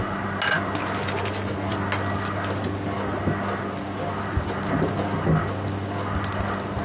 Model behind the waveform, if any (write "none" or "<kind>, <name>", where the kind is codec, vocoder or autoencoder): none